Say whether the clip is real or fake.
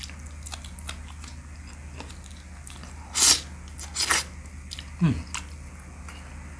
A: real